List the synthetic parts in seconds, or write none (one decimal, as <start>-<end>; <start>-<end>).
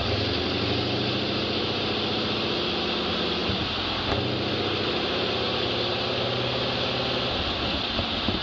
none